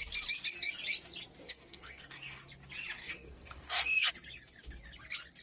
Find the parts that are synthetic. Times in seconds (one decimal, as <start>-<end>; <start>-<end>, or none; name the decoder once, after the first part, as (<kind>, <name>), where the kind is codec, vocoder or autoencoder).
1.5-2.4 (codec, SNAC); 3.0-4.1